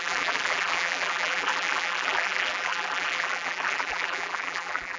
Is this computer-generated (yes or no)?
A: yes